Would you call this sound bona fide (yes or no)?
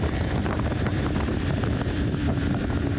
no